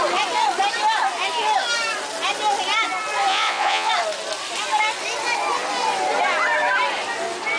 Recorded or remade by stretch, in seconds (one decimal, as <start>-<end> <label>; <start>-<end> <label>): 0.0-3.3 recorded; 3.3-3.9 remade; 3.9-7.6 recorded